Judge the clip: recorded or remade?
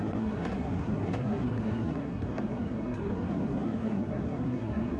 remade